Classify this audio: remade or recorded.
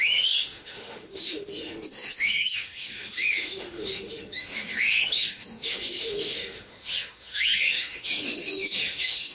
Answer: remade